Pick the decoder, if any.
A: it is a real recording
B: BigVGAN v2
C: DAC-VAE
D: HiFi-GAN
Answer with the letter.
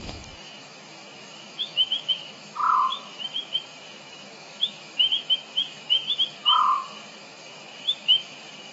C